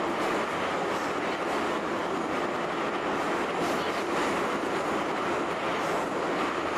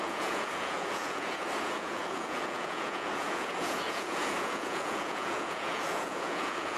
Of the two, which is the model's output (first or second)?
second